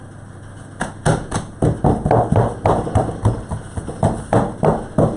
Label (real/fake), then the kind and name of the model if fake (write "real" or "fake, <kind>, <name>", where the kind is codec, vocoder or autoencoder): real